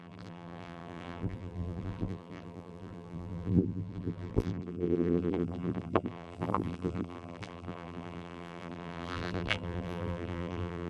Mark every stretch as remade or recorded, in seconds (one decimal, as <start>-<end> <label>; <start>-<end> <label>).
0.0-10.9 remade